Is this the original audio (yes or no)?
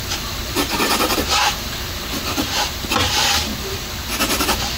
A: yes